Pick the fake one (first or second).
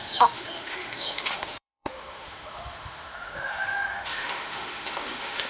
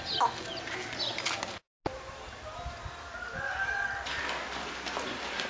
first